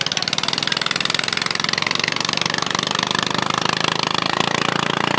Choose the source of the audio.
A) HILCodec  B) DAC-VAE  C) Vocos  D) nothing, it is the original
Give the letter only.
D